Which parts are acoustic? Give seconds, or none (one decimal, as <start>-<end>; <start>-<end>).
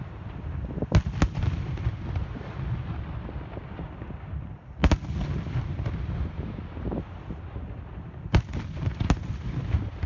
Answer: 0.0-10.1